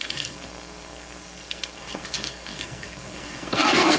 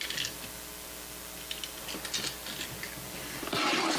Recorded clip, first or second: second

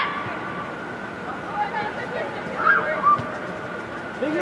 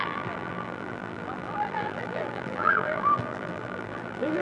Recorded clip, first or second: first